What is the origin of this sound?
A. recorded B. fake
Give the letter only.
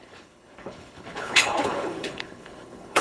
B